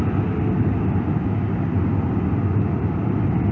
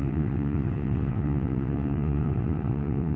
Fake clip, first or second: second